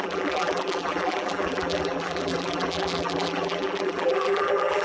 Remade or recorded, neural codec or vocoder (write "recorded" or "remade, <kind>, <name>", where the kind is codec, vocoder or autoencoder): remade, vocoder, BigVGAN v2